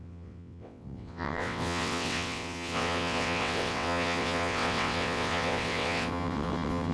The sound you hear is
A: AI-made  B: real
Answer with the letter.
A